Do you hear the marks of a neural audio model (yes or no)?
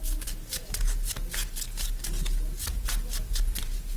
no